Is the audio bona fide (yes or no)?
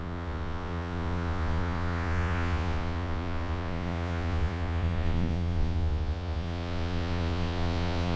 no